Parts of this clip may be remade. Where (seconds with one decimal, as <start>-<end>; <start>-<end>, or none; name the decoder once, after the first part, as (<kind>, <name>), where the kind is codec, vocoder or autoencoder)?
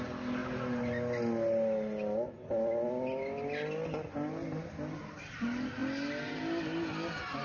none